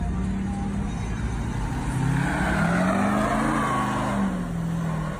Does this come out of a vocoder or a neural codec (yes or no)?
no